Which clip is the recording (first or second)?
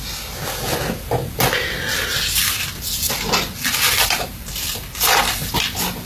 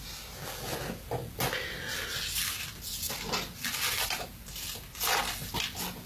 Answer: second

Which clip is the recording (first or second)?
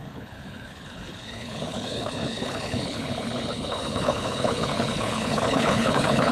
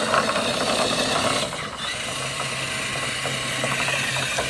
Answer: second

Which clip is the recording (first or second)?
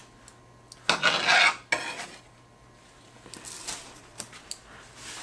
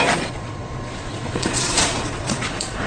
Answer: first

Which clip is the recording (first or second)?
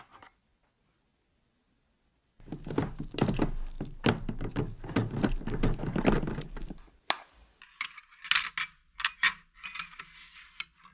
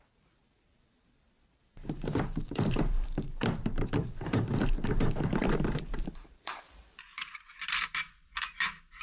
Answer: first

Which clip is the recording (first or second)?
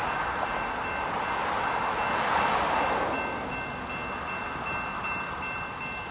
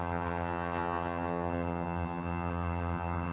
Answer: first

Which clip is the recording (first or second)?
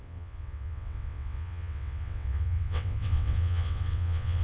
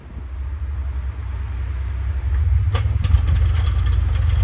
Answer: second